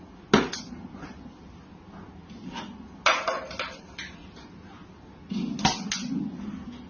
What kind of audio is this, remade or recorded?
recorded